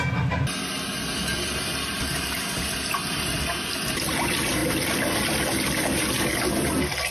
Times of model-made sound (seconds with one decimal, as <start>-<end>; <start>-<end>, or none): none